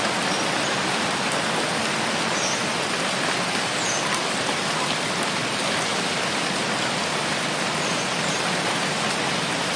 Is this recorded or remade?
recorded